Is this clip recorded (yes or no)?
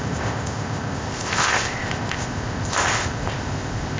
no